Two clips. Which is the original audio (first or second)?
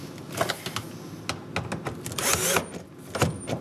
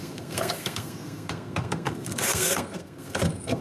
first